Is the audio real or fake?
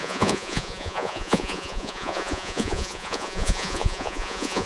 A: fake